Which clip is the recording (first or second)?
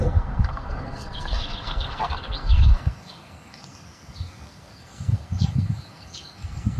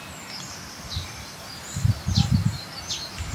second